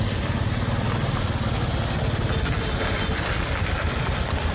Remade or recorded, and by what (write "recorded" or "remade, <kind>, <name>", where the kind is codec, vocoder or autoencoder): recorded